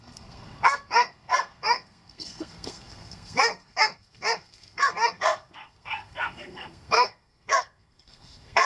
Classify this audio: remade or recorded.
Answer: remade